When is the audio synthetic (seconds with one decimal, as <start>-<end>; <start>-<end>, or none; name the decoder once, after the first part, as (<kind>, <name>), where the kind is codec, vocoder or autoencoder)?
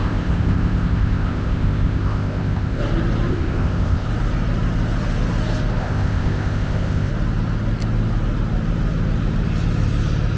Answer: 0.0-2.8 (codec, ZipCodec); 3.3-4.1; 5.8-7.1